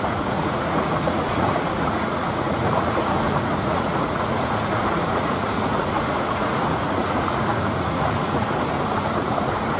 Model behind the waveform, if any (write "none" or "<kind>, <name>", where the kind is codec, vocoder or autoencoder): vocoder, Vocos